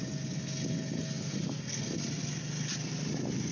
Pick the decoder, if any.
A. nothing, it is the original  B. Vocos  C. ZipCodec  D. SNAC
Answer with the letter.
A